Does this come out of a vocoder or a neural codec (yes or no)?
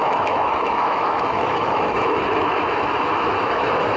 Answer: yes